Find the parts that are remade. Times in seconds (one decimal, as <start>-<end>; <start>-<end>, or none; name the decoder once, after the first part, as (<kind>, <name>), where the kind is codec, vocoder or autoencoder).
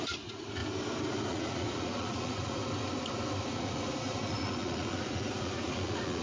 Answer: 0.0-0.6 (vocoder, Vocos); 1.3-2.6; 3.4-6.2